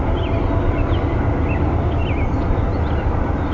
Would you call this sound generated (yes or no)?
no